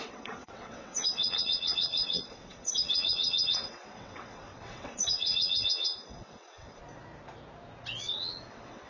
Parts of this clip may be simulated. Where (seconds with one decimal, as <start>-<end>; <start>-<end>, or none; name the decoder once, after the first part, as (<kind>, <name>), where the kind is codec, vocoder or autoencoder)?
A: 0.0-6.8 (vocoder, WaveNeXt); 8.0-8.9